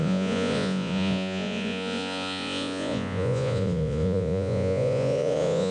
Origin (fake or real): fake